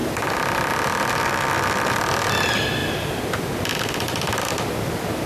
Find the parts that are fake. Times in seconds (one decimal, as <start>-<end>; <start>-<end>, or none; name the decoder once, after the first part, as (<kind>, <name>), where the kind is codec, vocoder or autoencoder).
0.0-0.7 (vocoder, BigVGAN v2); 2.8-3.3; 3.7-4.5